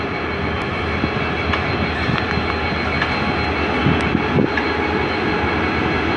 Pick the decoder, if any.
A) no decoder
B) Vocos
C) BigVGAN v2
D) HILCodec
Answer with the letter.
A